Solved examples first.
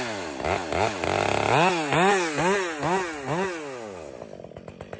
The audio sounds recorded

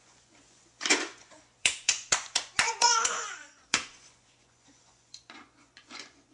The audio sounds remade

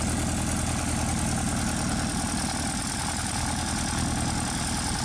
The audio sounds recorded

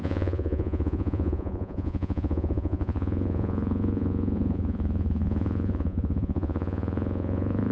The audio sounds remade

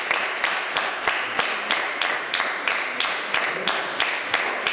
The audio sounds recorded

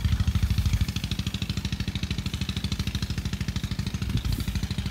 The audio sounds recorded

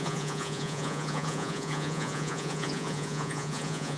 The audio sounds remade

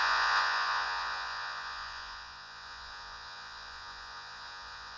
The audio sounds remade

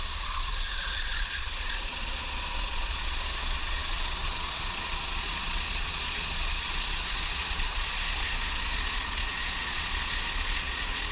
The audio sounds remade